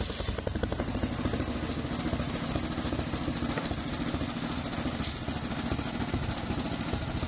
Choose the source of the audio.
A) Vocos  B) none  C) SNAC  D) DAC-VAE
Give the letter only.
B